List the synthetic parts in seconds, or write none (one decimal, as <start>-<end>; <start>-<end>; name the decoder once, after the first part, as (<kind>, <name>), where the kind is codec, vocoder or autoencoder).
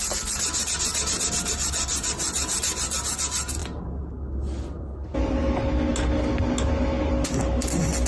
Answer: none